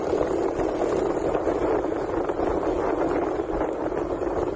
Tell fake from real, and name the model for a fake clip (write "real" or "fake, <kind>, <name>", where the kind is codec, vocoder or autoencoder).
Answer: real